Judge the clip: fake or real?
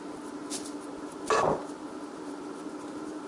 real